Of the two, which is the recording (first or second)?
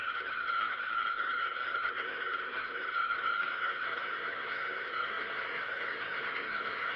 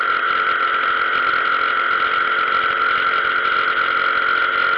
second